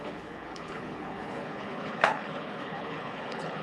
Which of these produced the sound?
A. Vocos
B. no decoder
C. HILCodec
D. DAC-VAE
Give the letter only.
C